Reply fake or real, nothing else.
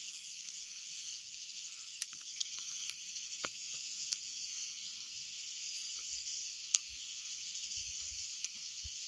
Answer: fake